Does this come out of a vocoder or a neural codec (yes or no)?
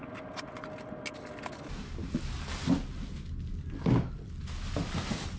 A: no